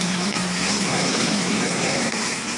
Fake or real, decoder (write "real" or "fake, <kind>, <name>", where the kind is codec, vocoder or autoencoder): fake, codec, SNAC